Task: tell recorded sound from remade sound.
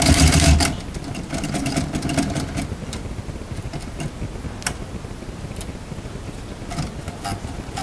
recorded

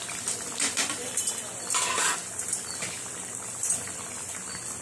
remade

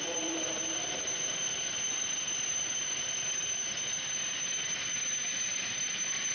remade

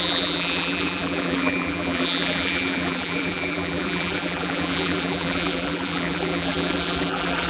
remade